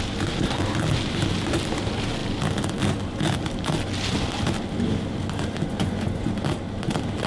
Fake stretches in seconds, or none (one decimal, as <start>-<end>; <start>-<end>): 5.7-6.3